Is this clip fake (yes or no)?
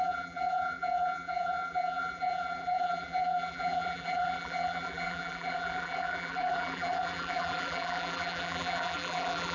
yes